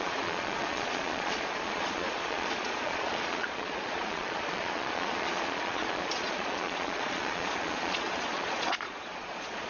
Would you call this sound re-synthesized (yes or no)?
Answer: yes